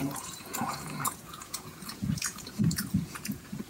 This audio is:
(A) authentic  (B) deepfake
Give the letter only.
B